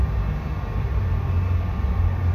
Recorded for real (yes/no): yes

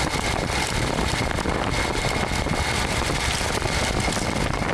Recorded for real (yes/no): yes